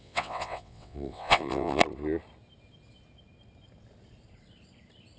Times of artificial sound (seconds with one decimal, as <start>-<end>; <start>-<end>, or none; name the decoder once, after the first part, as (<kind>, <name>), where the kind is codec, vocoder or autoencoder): 0.0-1.8 (vocoder, WaveNeXt)